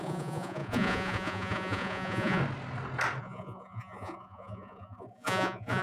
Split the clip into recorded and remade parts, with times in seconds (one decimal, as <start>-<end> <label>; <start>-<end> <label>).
0.0-2.4 remade; 2.4-3.2 recorded; 3.2-5.8 remade